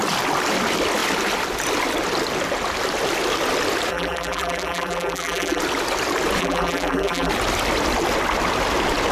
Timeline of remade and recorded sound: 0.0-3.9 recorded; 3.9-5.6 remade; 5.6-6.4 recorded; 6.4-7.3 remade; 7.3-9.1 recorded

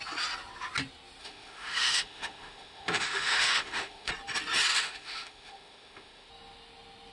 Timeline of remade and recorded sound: 0.0-1.2 recorded; 1.2-4.1 remade; 4.1-4.7 recorded; 4.7-6.3 remade; 6.3-7.1 recorded

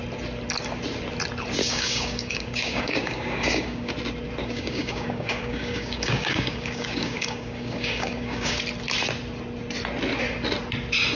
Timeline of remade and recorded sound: 0.0-1.6 recorded; 1.6-3.9 remade; 3.9-4.4 recorded; 4.4-8.6 remade; 8.6-11.2 recorded

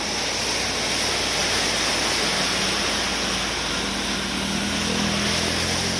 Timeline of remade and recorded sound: 0.0-6.0 recorded

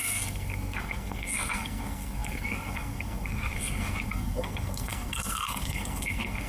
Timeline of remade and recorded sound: 0.0-6.5 remade

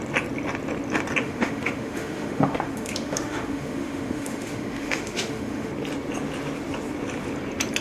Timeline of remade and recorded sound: 0.0-1.2 recorded; 1.2-5.7 remade; 5.7-7.8 recorded